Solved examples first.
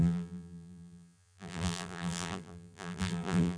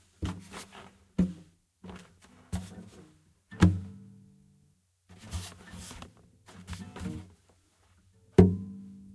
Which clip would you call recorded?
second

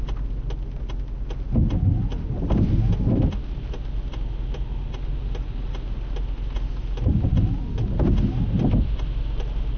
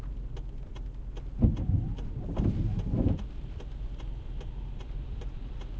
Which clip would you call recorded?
first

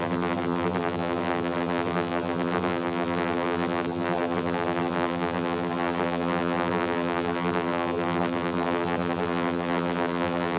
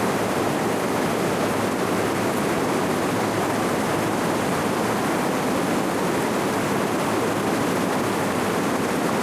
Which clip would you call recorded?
second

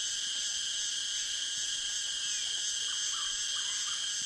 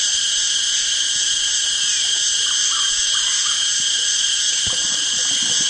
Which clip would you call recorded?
first